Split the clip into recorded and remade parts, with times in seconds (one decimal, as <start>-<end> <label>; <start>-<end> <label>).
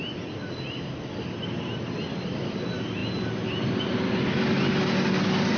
0.0-5.6 recorded